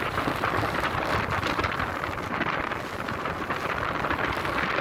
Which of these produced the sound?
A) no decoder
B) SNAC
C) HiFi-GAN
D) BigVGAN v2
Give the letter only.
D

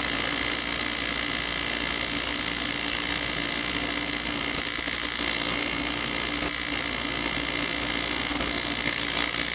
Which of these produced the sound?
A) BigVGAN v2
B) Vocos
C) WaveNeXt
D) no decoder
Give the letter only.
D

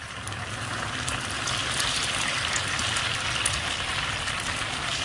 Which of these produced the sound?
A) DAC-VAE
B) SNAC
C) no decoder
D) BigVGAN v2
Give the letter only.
D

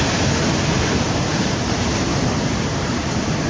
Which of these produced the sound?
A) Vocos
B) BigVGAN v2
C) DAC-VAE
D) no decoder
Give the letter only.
B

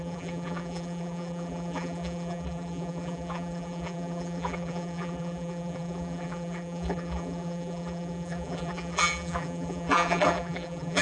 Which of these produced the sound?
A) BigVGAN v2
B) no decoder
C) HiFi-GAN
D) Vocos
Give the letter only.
A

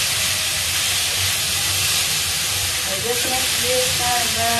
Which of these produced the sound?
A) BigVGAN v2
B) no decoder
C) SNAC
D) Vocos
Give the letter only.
A